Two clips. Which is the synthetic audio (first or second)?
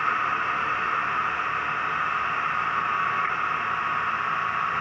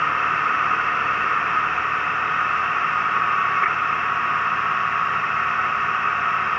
second